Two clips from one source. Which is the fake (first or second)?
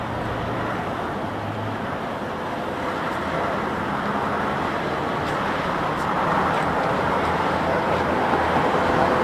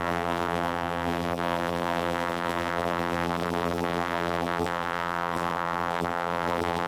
second